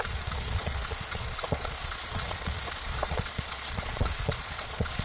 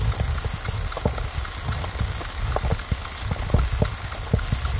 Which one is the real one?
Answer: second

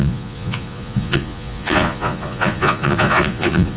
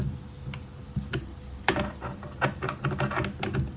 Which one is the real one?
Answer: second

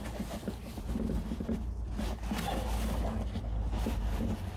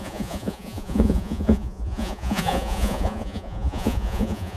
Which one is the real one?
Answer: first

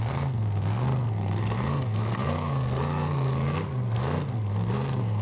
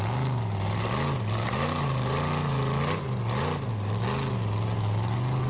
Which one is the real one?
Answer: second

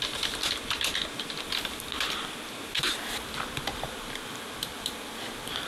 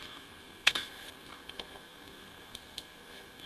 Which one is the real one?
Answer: first